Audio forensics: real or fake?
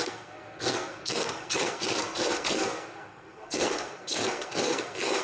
fake